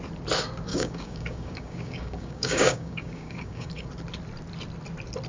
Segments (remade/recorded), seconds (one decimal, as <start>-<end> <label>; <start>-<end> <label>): 0.0-0.7 recorded; 0.7-3.9 remade; 3.9-5.3 recorded